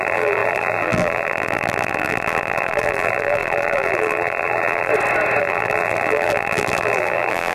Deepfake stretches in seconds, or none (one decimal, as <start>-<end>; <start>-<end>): 0.0-4.9; 5.4-7.5